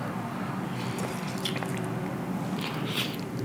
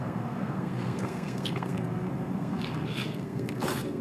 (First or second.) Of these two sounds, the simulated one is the second